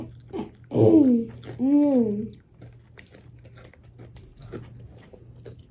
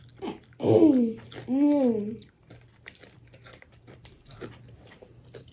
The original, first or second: first